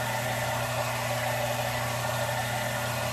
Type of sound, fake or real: real